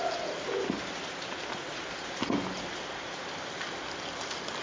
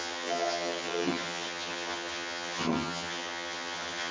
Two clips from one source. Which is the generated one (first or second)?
second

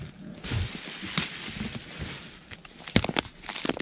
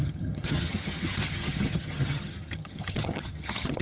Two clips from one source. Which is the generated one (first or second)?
second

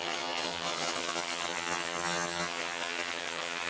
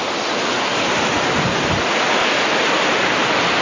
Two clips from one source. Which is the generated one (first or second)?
first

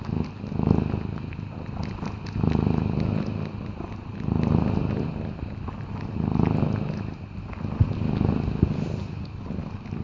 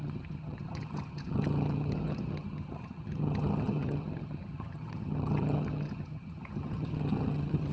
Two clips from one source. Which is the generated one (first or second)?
second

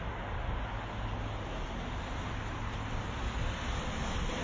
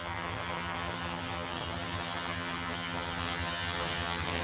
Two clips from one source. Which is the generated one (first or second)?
second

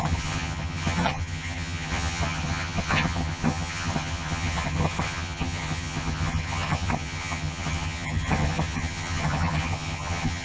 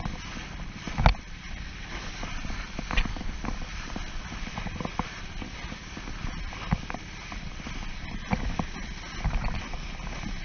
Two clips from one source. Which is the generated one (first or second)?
first